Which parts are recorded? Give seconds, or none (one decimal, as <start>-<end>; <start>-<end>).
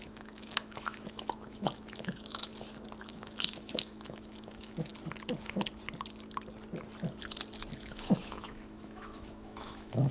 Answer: 2.5-3.0; 4.9-7.8